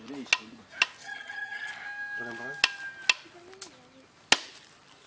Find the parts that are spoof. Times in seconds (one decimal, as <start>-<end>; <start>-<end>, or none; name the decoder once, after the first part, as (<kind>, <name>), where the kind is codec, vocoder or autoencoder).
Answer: 1.0-1.7 (vocoder, HiFi-GAN)